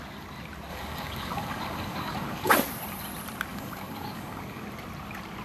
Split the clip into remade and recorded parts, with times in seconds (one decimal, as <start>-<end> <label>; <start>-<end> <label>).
0.0-0.7 recorded; 0.7-2.5 remade; 2.5-3.5 recorded; 3.5-4.6 remade; 4.6-5.4 recorded